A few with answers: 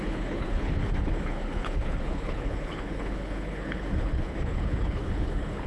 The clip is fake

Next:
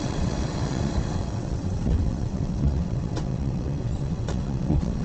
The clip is fake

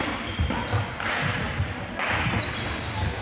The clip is real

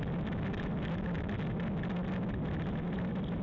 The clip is real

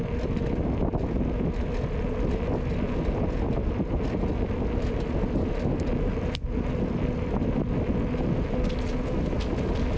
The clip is real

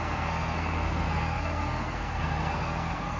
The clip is fake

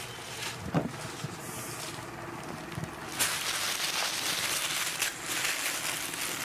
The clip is real